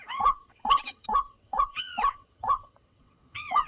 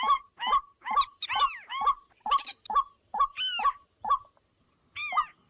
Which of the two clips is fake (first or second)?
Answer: first